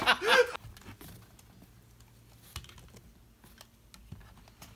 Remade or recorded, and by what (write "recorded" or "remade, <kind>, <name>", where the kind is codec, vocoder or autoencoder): recorded